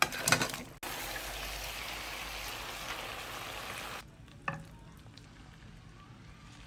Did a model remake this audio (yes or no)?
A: no